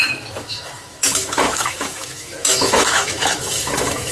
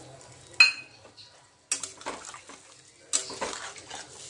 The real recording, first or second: second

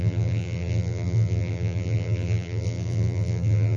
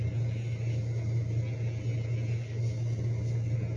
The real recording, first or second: second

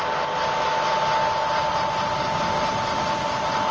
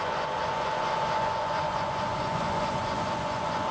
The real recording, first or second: first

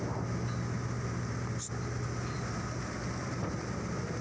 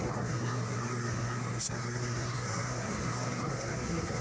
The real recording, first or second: first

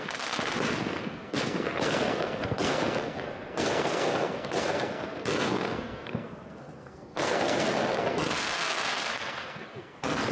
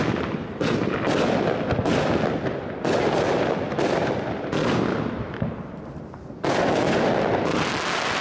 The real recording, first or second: second